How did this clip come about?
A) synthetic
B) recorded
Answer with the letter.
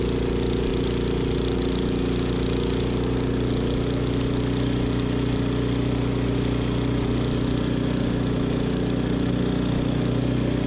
B